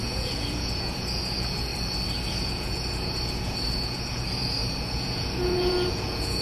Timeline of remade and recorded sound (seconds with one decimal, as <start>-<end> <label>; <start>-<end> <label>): 0.0-1.7 remade; 1.7-2.4 recorded; 2.4-6.4 remade